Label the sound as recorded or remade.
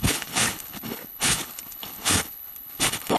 remade